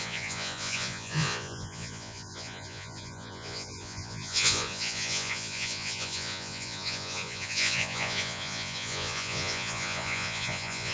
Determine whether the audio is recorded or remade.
remade